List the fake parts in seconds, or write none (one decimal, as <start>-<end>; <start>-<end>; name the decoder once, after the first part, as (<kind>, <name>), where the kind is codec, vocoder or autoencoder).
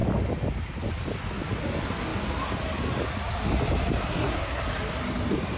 4.1-4.6 (codec, SNAC)